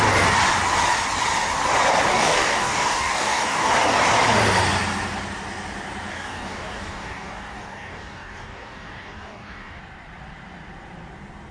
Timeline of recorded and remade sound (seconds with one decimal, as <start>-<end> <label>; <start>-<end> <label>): 0.0-2.1 recorded; 2.1-3.7 remade; 3.7-6.1 recorded; 6.1-9.8 remade; 9.8-11.5 recorded